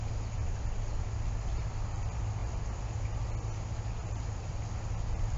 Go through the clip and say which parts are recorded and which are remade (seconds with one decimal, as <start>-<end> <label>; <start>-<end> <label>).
0.0-4.0 recorded; 4.0-4.6 remade; 4.6-5.4 recorded